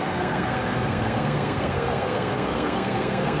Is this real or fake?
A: fake